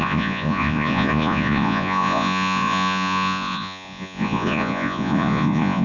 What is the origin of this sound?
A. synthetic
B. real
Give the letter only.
A